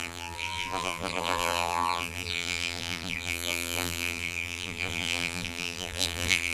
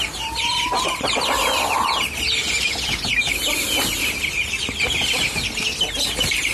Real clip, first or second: second